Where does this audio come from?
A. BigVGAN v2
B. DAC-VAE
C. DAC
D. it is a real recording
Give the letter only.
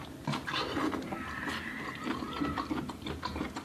A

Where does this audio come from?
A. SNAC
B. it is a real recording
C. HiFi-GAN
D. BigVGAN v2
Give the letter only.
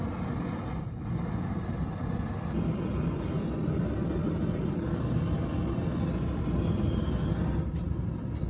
B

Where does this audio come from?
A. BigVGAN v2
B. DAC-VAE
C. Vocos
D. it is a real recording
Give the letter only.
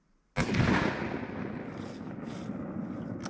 D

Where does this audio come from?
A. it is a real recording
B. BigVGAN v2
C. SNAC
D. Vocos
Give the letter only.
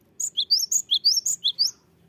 A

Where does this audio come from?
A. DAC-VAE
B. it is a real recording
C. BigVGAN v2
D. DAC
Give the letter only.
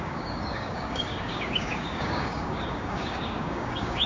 D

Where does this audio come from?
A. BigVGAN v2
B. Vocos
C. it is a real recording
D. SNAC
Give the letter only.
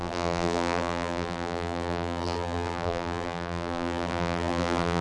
A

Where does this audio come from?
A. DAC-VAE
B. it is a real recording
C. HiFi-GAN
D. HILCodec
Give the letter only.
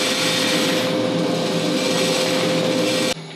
B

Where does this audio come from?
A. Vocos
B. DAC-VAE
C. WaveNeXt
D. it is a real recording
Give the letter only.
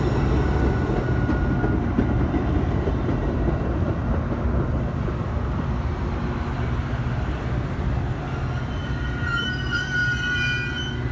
D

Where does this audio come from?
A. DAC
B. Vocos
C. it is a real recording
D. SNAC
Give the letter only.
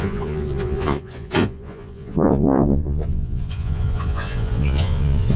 B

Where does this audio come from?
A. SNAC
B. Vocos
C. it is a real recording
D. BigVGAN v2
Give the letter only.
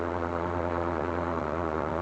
B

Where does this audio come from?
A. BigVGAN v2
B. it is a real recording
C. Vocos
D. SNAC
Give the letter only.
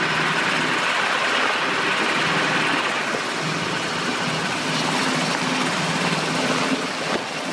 B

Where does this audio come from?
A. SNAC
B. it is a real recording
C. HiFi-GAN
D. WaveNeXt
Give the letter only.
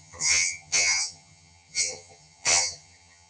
C